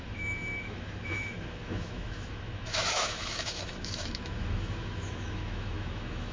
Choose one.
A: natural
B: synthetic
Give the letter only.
B